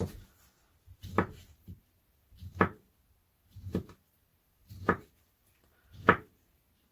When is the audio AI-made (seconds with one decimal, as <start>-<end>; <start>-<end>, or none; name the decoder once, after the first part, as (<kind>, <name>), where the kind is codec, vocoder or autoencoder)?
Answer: 4.3-6.9 (vocoder, BigVGAN v2)

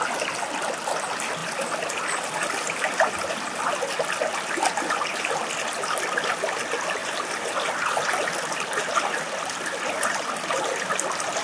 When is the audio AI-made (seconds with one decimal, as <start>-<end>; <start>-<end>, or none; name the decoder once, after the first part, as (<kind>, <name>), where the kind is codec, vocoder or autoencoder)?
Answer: 1.4-3.8 (vocoder, BigVGAN v2); 7.0-7.6